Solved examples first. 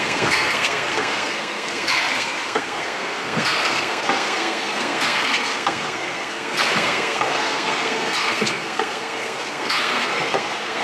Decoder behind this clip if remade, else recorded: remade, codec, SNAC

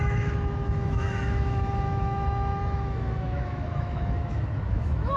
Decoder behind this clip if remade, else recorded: remade, autoencoder, DAC-VAE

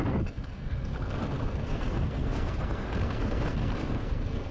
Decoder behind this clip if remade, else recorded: remade, codec, SNAC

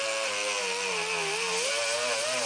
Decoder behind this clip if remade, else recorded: recorded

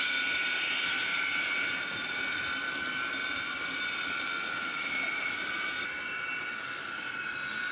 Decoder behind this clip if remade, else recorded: recorded